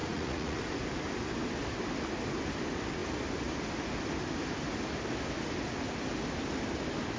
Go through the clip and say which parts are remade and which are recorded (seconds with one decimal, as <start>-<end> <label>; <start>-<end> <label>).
0.0-0.7 remade; 0.7-7.2 recorded